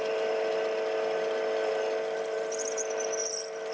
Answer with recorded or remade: recorded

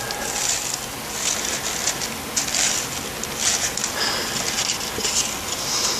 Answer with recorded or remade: recorded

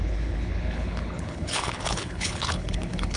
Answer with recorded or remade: remade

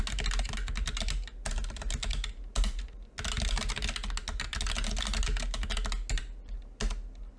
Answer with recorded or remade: recorded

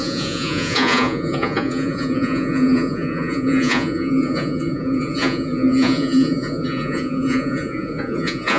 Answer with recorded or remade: remade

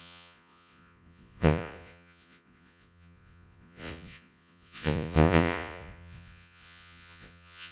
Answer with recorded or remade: remade